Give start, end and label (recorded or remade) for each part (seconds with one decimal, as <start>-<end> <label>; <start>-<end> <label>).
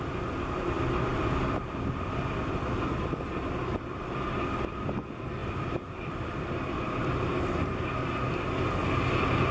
0.0-5.4 recorded; 5.4-7.6 remade; 7.6-9.5 recorded